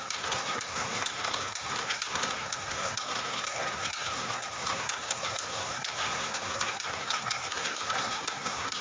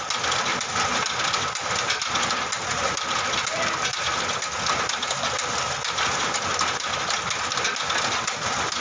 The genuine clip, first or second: second